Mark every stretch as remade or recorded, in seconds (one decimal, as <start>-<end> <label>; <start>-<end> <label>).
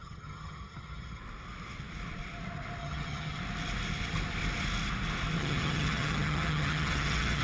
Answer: 0.0-1.2 remade; 1.2-2.8 recorded; 2.8-3.4 remade; 3.4-5.4 recorded; 5.4-7.4 remade